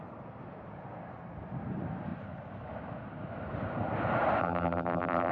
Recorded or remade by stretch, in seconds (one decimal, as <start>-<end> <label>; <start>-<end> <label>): 0.0-4.4 recorded; 4.4-5.3 remade

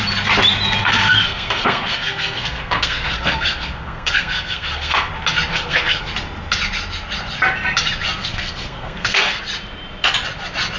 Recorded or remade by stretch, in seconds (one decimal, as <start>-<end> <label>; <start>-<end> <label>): 0.0-0.8 recorded; 0.8-5.1 remade; 5.1-5.5 recorded; 5.5-6.1 remade; 6.1-8.2 recorded; 8.2-9.4 remade; 9.4-10.8 recorded

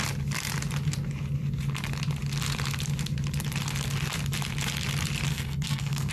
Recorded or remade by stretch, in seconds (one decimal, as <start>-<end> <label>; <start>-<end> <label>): 0.0-5.3 recorded; 5.3-6.1 remade

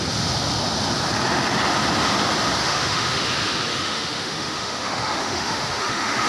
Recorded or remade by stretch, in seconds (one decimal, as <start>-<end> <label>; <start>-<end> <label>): 0.0-2.6 recorded; 2.6-3.3 remade; 3.3-3.7 recorded; 3.7-6.3 remade

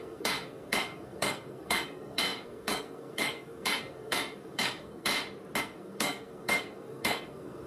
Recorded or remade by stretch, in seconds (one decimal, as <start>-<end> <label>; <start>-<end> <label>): 0.0-5.1 remade; 5.1-5.6 recorded; 5.6-7.7 remade

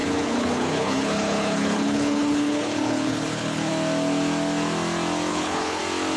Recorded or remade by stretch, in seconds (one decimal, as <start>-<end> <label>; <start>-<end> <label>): 0.0-3.7 remade; 3.7-5.3 recorded; 5.3-5.8 remade; 5.8-6.2 recorded

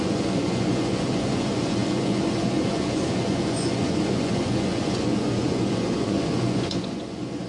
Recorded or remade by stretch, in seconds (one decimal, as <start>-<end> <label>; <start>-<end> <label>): 0.0-7.5 remade

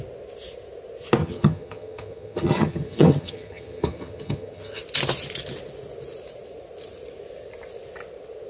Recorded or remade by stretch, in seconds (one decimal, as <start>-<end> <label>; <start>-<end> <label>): 0.0-1.2 recorded; 1.2-4.8 remade; 4.8-8.5 recorded